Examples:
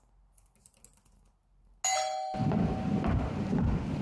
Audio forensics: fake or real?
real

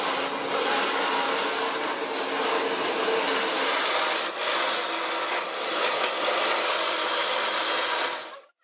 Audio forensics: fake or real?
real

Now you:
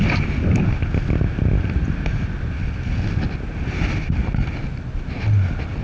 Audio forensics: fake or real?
real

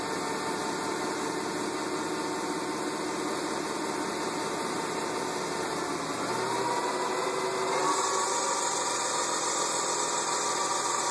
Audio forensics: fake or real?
real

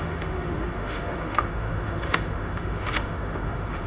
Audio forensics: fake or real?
fake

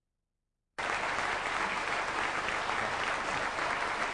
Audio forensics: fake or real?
real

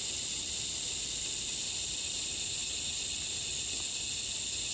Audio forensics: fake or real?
real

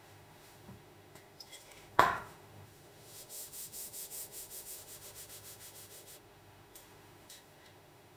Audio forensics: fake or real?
fake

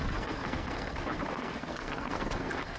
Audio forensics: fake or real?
fake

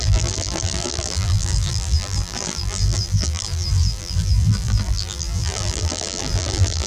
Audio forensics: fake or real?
fake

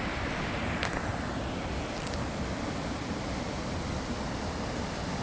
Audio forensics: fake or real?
real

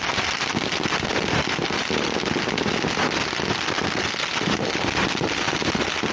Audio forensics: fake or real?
real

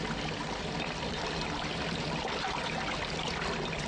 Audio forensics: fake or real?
real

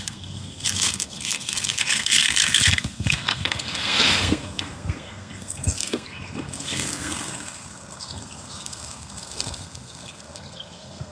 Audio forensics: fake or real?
fake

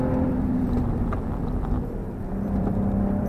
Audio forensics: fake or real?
fake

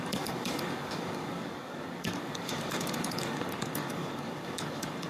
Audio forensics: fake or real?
fake